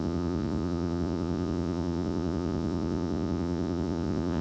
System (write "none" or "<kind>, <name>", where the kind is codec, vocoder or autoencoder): vocoder, Vocos